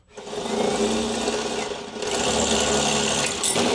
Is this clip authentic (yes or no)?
yes